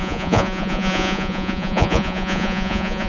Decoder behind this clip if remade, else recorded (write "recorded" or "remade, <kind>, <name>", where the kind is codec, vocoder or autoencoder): remade, vocoder, Vocos